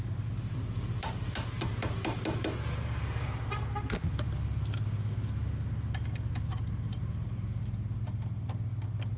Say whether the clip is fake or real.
real